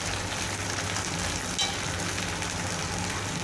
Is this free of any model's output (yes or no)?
yes